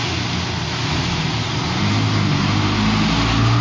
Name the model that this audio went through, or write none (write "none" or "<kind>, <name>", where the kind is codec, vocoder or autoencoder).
none